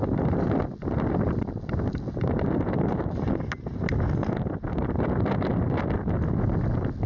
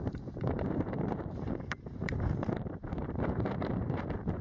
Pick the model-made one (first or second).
second